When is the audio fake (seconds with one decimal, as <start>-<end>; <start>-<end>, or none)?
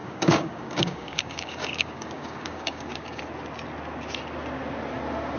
0.0-3.2